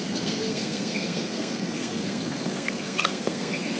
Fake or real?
fake